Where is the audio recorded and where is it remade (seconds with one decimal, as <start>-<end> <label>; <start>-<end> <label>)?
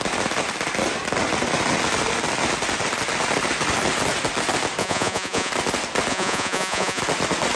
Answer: 0.0-4.8 recorded; 4.8-5.5 remade; 5.5-6.1 recorded; 6.1-7.0 remade; 7.0-7.6 recorded